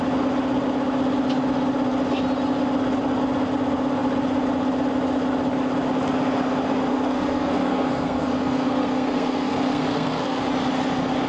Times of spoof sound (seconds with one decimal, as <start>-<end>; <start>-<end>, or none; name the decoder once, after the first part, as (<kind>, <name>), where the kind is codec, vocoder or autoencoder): 6.9-10.4 (codec, SNAC)